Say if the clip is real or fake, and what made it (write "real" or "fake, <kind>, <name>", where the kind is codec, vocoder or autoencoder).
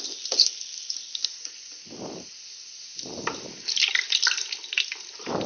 real